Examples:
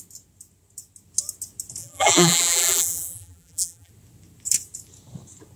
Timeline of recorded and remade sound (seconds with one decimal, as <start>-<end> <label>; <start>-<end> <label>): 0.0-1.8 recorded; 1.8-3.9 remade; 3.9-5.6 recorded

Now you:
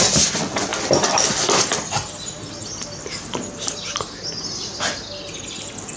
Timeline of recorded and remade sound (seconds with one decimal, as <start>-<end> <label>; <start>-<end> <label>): 0.0-6.0 recorded

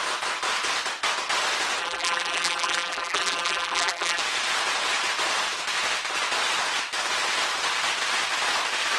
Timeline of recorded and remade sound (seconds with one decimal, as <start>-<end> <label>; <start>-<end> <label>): 0.0-1.8 recorded; 1.8-4.2 remade; 4.2-9.0 recorded

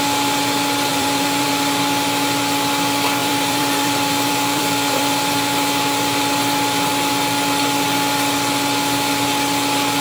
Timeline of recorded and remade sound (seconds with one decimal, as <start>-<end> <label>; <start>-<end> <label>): 0.0-0.9 recorded; 0.9-1.5 remade; 1.5-3.2 recorded; 3.2-6.9 remade; 6.9-10.0 recorded

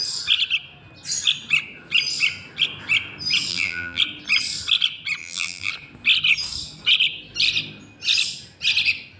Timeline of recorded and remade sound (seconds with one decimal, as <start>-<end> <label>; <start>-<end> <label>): 0.0-3.5 recorded; 3.5-4.0 remade; 4.0-5.2 recorded; 5.2-5.7 remade; 5.7-9.2 recorded

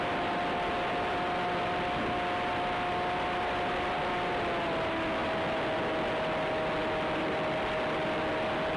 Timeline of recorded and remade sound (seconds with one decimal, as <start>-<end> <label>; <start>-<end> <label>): 0.0-8.8 recorded